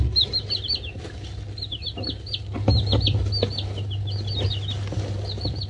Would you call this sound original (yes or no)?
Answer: yes